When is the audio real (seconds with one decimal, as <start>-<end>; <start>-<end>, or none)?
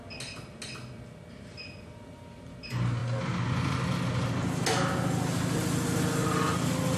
0.0-7.0